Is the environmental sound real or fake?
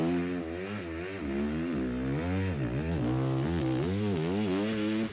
real